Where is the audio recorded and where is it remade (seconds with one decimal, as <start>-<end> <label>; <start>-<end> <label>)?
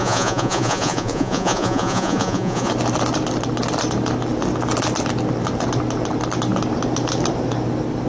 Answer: 0.0-2.7 remade; 2.7-8.1 recorded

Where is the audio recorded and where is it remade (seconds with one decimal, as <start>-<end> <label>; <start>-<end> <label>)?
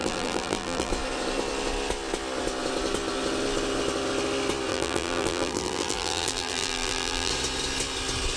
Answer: 0.0-0.9 remade; 0.9-4.7 recorded; 4.7-7.3 remade; 7.3-8.4 recorded